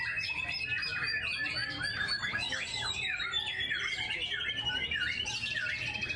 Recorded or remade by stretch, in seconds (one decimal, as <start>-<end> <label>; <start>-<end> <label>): 0.0-1.6 recorded; 1.6-5.3 remade; 5.3-6.2 recorded